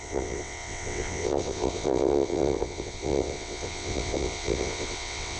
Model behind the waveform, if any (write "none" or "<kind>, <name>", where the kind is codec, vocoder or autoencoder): vocoder, WaveNeXt